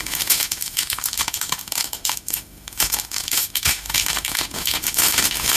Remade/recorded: remade